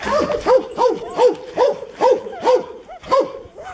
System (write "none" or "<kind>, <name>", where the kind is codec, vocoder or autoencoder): vocoder, BigVGAN v2